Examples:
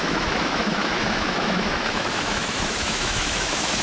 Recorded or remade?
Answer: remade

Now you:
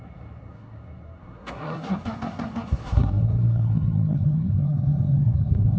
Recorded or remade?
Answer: remade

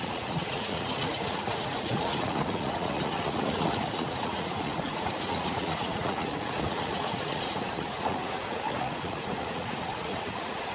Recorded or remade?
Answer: remade